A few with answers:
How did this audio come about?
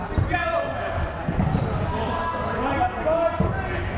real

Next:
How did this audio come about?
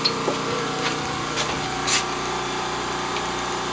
real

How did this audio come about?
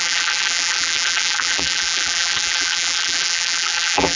fake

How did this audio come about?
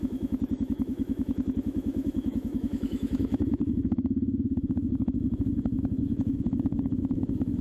fake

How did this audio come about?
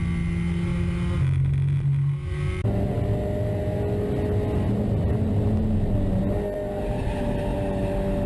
real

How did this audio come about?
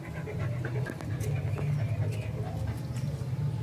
real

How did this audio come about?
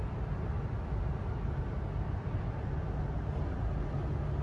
real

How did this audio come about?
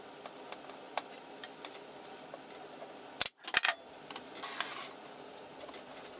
real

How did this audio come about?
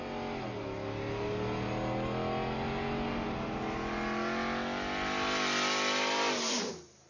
real